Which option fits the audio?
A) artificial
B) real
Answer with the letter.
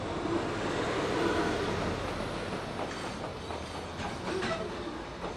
B